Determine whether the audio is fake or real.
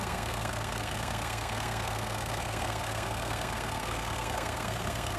fake